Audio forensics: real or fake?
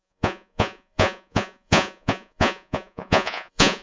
fake